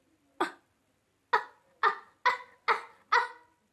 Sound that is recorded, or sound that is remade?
recorded